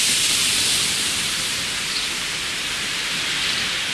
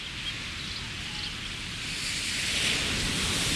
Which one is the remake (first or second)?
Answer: first